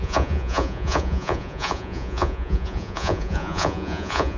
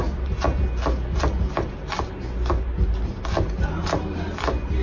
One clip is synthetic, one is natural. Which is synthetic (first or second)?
first